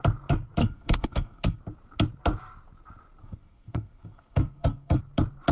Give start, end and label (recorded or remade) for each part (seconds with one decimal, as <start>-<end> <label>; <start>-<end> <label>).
0.0-0.6 recorded; 0.6-1.6 remade; 1.6-3.2 recorded; 3.2-5.0 remade; 5.0-5.5 recorded